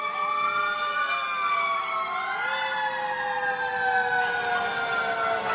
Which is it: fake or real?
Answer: real